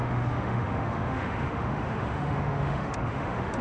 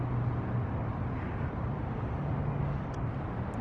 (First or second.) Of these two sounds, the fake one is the first